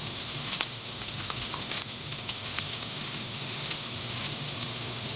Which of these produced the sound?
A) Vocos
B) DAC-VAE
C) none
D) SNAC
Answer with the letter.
B